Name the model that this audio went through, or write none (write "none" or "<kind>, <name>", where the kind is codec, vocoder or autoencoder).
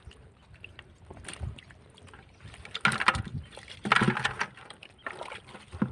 none